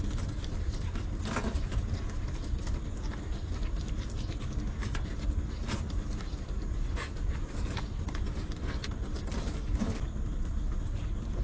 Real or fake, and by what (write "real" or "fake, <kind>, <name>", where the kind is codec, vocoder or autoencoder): real